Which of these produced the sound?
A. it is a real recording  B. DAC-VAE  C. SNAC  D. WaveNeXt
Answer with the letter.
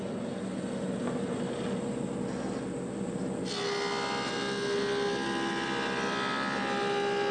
A